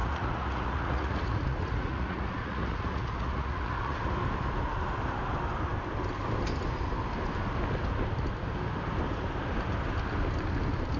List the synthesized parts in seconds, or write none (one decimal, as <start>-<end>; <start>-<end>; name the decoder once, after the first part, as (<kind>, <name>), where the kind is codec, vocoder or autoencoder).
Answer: 0.0-4.1 (vocoder, Vocos)